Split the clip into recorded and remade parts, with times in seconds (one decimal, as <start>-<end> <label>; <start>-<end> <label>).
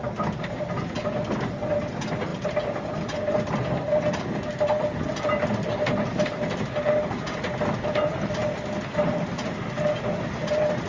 0.0-10.9 recorded